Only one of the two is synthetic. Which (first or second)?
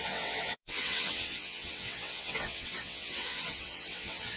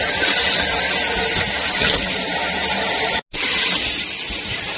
first